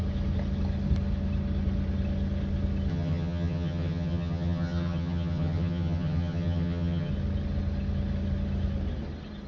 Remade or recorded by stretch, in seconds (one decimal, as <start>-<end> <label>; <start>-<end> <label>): 0.0-2.9 recorded; 2.9-7.1 remade; 7.1-9.5 recorded